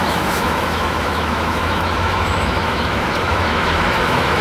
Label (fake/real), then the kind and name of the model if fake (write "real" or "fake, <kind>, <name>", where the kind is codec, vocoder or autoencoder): fake, autoencoder, DAC-VAE